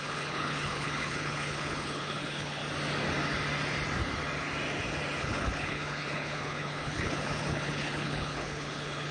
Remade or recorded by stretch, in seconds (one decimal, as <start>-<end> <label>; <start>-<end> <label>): 0.0-2.6 remade; 2.6-5.2 recorded; 5.2-9.1 remade